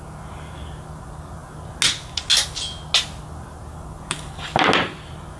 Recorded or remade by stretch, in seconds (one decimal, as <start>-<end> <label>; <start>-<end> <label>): 0.0-5.4 recorded